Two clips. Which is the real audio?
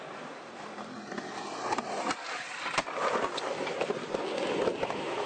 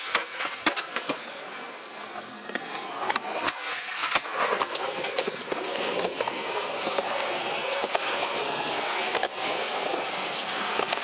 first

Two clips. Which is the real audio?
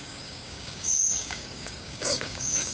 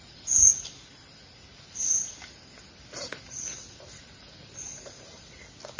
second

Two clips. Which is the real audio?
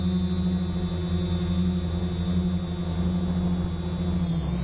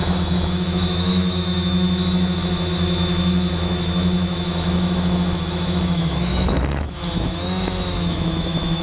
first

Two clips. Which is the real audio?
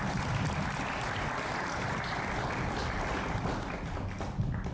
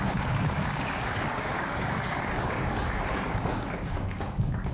first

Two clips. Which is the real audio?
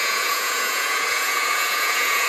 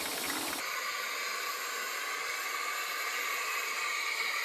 second